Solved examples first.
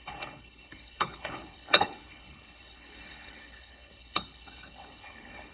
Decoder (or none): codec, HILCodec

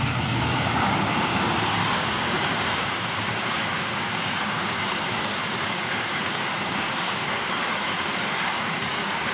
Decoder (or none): codec, DAC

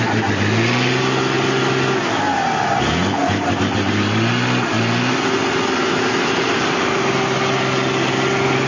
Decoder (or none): none